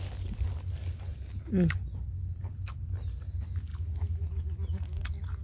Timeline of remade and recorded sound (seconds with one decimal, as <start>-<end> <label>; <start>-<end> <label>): 0.0-5.4 recorded